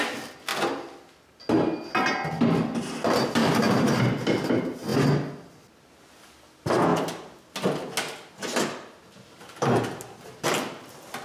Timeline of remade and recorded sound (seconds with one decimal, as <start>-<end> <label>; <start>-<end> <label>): 0.0-3.4 recorded; 3.4-4.0 remade; 4.0-11.2 recorded